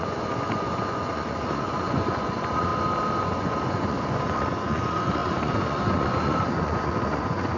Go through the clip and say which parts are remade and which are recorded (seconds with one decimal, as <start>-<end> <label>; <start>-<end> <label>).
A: 0.0-2.7 remade; 2.7-3.2 recorded; 3.2-7.6 remade